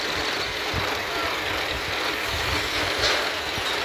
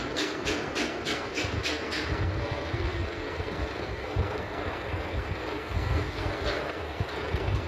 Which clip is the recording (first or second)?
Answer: first